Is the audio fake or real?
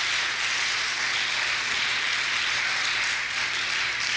real